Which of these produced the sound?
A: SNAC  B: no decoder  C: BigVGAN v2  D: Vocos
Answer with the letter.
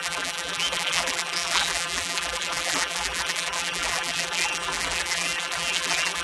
C